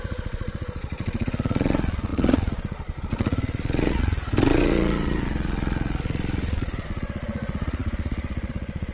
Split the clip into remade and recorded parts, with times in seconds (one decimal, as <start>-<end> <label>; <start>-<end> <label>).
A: 0.0-8.9 remade